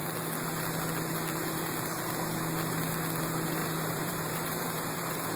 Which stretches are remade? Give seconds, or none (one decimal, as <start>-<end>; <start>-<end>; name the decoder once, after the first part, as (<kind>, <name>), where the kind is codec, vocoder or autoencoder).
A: 3.6-5.4 (vocoder, BigVGAN v2)